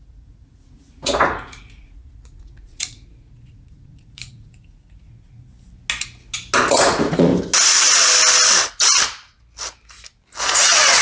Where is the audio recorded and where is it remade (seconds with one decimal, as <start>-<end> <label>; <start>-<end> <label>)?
0.0-5.5 remade; 5.5-6.7 recorded; 6.7-7.3 remade; 7.3-10.4 recorded; 10.4-11.0 remade